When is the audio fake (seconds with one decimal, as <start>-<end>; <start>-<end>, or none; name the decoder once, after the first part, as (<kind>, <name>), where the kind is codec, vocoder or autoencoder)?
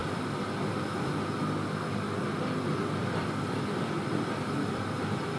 0.0-1.1 (vocoder, BigVGAN v2); 3.0-5.4